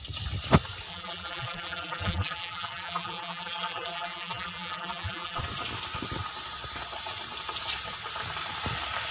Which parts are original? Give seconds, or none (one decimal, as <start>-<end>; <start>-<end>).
0.0-0.9; 5.4-9.1

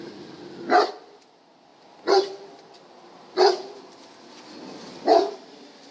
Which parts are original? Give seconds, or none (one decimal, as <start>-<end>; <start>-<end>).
0.0-5.9

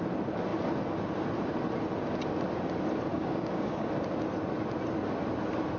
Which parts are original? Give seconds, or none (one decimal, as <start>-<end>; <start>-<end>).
0.0-3.1; 3.9-5.8

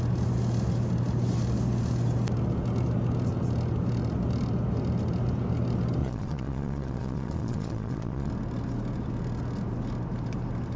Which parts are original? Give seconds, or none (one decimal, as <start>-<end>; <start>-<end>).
0.0-6.0; 8.3-10.8